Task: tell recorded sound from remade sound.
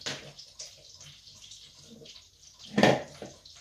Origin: recorded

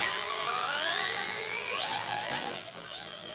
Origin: remade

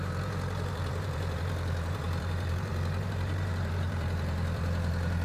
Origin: remade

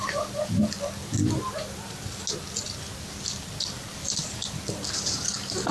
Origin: recorded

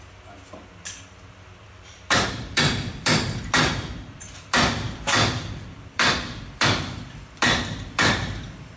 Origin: remade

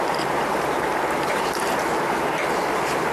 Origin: remade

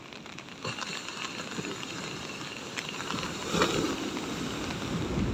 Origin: recorded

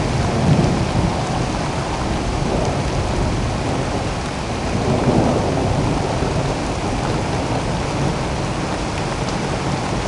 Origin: recorded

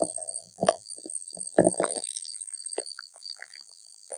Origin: remade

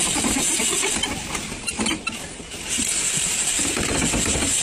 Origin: remade